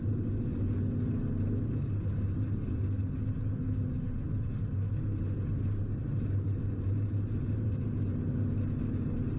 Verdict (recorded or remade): recorded